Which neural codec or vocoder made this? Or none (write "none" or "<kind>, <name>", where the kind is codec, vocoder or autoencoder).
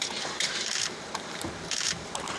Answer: vocoder, BigVGAN v2